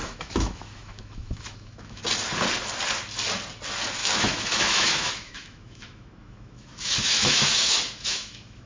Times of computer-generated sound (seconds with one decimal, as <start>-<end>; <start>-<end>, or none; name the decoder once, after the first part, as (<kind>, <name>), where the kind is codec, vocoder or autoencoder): 0.0-2.0 (autoencoder, DAC-VAE); 4.0-8.7